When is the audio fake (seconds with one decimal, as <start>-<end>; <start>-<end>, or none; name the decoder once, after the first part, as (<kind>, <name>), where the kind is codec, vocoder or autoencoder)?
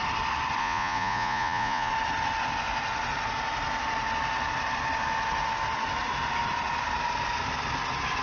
0.6-1.9 (vocoder, Vocos)